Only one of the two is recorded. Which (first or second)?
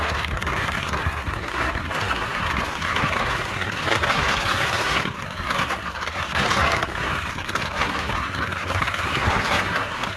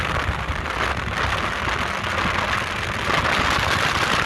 second